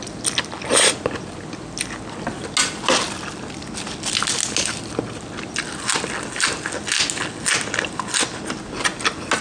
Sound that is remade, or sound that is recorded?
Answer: recorded